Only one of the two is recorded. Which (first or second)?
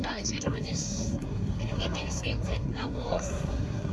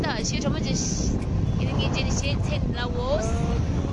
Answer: second